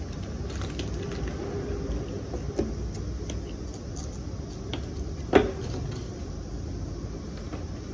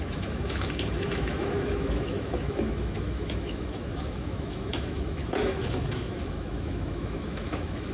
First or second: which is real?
first